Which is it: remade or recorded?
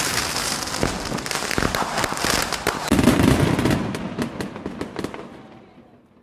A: recorded